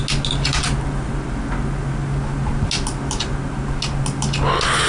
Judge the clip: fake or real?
real